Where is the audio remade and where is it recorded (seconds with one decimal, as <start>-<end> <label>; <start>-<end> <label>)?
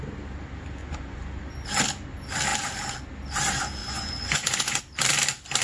0.0-0.8 recorded; 0.8-1.3 remade; 1.3-3.8 recorded; 3.8-4.8 remade; 4.8-5.6 recorded